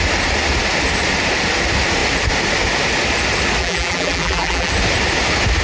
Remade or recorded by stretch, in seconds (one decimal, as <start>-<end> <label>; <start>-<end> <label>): 0.0-3.6 recorded; 3.6-4.7 remade; 4.7-5.6 recorded

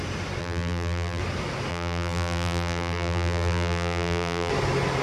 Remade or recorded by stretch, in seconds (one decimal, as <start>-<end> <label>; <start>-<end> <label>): 0.0-0.4 recorded; 0.4-1.2 remade; 1.2-1.7 recorded; 1.7-4.5 remade; 4.5-5.0 recorded

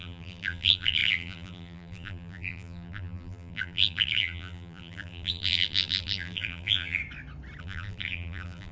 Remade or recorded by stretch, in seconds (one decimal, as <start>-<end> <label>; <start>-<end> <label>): 0.0-7.0 remade; 7.0-7.6 recorded; 7.6-8.7 remade

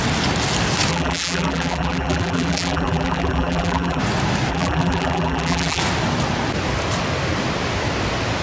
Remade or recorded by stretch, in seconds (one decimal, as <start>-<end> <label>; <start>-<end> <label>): 0.0-0.9 recorded; 0.9-4.0 remade; 4.0-4.5 recorded; 4.5-5.8 remade; 5.8-8.4 recorded